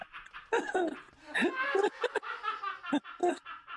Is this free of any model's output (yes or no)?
yes